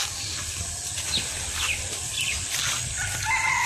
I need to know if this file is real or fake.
real